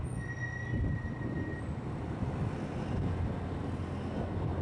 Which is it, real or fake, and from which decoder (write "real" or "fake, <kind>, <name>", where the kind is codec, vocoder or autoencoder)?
real